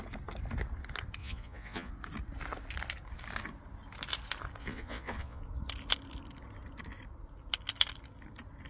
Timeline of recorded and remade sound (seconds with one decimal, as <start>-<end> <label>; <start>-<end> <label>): 0.0-1.2 recorded; 1.2-1.9 remade; 1.9-4.6 recorded; 4.6-5.4 remade; 5.4-8.7 recorded